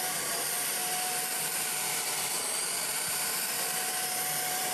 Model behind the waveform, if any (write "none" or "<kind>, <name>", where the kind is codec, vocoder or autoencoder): vocoder, BigVGAN v2